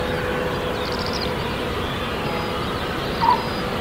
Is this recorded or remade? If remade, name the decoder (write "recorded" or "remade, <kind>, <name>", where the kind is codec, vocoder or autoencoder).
recorded